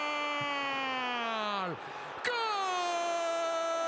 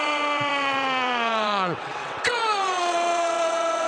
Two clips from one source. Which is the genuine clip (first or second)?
first